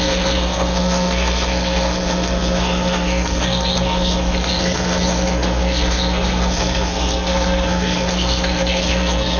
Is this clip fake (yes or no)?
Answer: yes